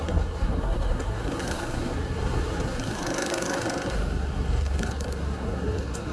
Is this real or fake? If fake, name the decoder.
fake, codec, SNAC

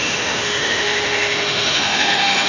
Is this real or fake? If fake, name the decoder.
fake, autoencoder, DAC-VAE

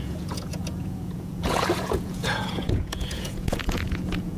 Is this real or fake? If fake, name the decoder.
fake, vocoder, Vocos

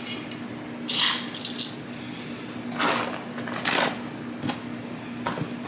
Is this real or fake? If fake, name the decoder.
real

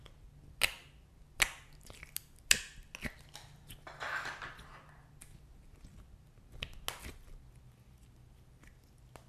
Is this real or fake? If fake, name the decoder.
real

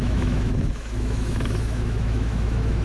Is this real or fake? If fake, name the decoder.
fake, autoencoder, DAC-VAE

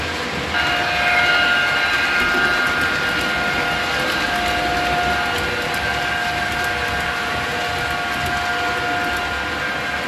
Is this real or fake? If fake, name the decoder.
real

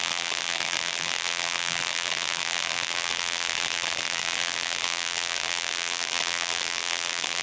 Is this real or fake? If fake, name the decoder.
fake, vocoder, BigVGAN v2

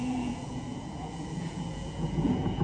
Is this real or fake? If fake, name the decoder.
fake, vocoder, Vocos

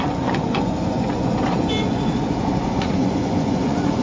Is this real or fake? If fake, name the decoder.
fake, vocoder, Vocos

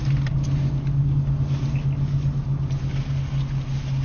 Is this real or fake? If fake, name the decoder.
real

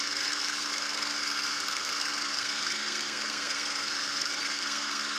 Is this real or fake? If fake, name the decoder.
fake, codec, SNAC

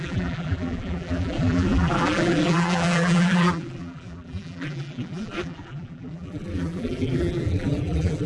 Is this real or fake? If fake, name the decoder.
fake, vocoder, BigVGAN v2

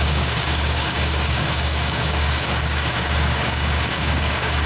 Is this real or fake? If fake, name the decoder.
fake, codec, DAC